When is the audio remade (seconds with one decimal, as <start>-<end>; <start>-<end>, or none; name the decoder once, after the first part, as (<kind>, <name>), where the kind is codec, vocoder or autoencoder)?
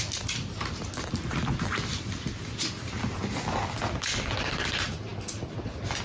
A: none